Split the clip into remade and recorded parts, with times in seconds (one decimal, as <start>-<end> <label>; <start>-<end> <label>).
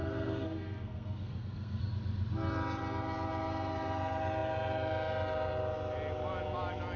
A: 0.0-1.8 remade; 1.8-7.0 recorded